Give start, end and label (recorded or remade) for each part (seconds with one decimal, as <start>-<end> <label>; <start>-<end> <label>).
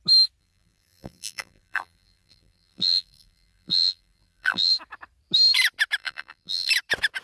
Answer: 0.0-0.4 recorded; 0.4-4.7 remade; 4.7-6.0 recorded; 6.0-6.7 remade; 6.7-7.2 recorded